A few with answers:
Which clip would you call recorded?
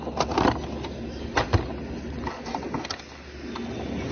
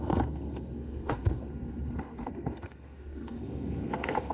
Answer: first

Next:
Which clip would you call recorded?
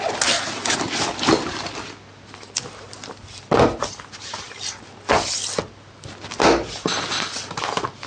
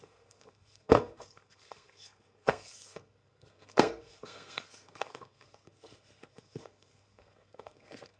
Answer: first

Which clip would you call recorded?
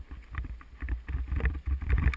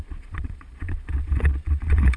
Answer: first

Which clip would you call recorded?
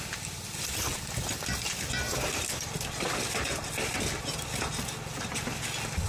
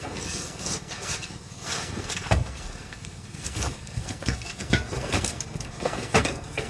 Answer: first